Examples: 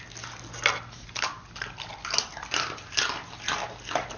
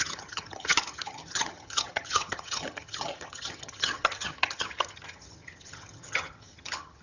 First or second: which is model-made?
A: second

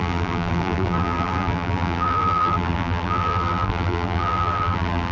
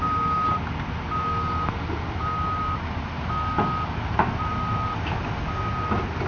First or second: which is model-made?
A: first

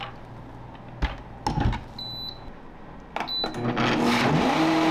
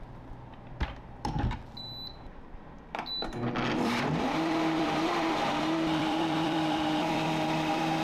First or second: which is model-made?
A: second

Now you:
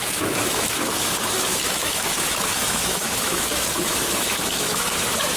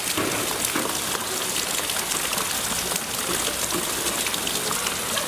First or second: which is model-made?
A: first